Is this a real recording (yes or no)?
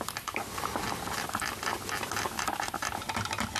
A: yes